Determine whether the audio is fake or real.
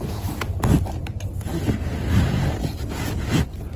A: real